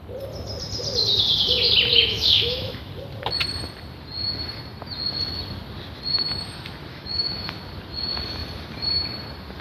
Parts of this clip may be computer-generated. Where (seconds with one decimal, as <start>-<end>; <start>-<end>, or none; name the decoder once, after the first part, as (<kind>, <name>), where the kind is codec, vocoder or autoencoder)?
1.9-2.9 (autoencoder, DAC-VAE); 6.9-7.5